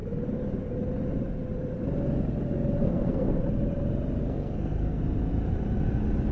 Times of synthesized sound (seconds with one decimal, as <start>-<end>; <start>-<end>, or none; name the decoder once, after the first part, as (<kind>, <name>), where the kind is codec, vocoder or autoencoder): 2.8-3.4 (codec, SNAC); 4.2-5.0